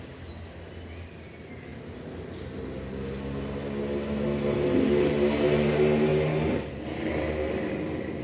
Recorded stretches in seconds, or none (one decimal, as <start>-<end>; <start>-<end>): 0.0-8.2